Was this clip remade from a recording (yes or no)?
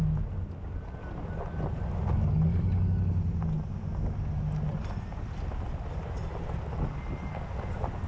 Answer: no